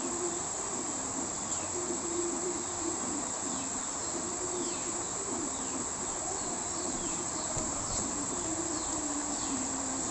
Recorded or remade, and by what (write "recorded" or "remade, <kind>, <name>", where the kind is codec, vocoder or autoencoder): remade, vocoder, BigVGAN v2